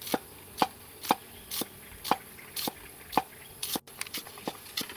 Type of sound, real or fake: real